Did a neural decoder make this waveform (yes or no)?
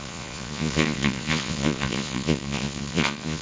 yes